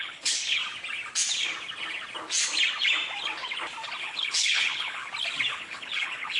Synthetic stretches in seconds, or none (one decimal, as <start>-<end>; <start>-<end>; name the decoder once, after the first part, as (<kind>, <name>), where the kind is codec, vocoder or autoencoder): 0.0-0.6 (codec, HILCodec); 4.0-5.0; 5.5-6.4